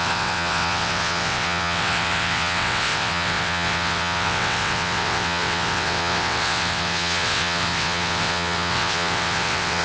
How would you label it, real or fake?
fake